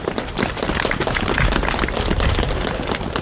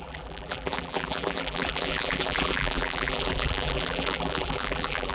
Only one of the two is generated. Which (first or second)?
second